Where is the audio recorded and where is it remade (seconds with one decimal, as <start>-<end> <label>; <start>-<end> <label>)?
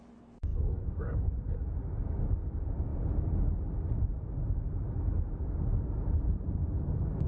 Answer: 0.0-0.5 recorded; 0.5-1.5 remade; 1.5-7.3 recorded